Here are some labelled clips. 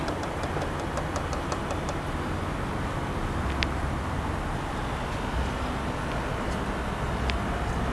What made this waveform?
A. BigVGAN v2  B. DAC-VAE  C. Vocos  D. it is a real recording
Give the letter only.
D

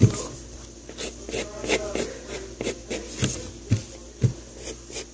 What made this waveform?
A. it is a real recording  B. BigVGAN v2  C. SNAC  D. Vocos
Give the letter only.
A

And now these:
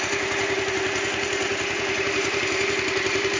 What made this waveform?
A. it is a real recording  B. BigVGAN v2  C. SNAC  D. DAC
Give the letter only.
A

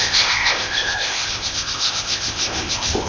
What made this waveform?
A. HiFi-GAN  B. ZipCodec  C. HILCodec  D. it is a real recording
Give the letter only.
B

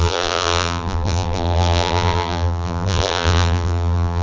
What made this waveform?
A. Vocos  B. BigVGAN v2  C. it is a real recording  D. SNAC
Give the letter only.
B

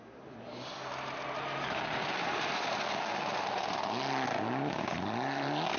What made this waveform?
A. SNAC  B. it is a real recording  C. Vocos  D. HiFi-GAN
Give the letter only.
B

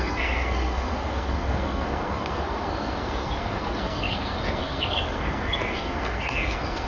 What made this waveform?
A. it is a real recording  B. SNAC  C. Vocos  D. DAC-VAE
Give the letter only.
B